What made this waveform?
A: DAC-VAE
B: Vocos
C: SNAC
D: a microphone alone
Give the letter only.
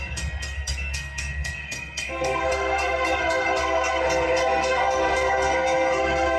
C